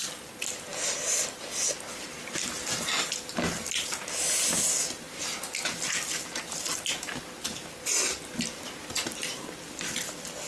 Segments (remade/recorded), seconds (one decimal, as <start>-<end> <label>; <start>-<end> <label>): 0.0-10.5 recorded